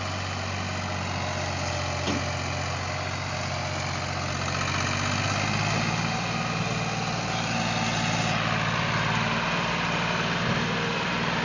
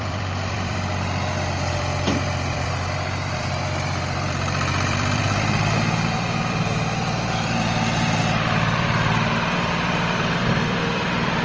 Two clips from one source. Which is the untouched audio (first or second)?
first